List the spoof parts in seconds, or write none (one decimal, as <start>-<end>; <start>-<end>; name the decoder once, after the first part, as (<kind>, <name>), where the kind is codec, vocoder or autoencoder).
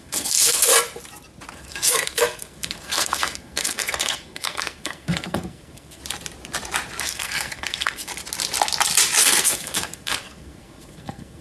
0.0-0.7 (codec, SNAC); 1.5-6.0; 7.0-8.1; 9.2-11.4